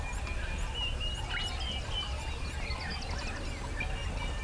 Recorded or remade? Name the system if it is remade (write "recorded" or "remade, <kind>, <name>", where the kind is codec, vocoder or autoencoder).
recorded